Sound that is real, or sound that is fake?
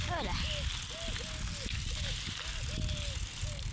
real